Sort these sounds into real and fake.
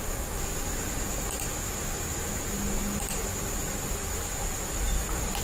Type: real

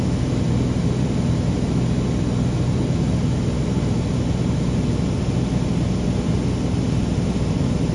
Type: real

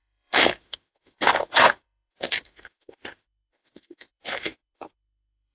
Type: fake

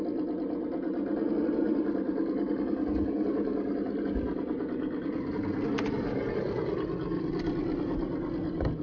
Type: real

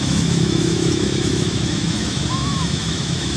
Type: fake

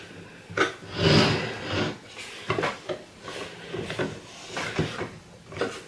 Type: real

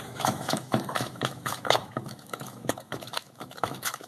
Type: fake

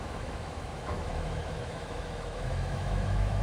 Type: fake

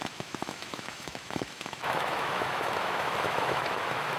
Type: fake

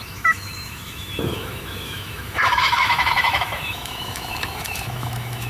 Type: fake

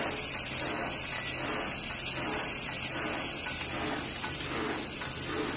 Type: real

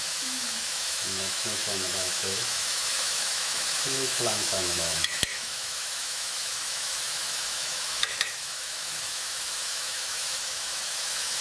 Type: fake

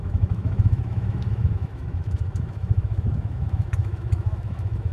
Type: fake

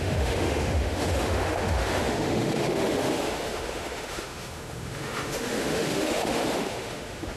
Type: fake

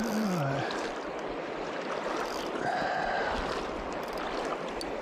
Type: real